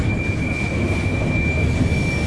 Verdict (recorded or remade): recorded